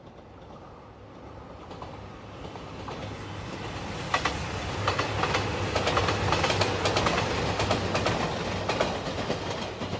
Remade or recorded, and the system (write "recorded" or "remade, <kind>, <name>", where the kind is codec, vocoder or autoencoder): recorded